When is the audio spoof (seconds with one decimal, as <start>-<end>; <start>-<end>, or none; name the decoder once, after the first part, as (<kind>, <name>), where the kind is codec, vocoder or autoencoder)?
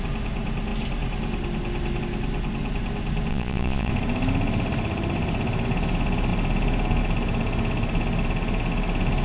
3.3-3.9 (vocoder, Vocos)